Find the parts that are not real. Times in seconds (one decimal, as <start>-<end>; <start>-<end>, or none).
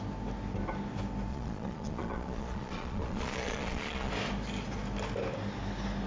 1.3-4.1